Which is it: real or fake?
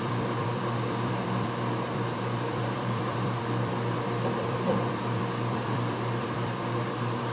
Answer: fake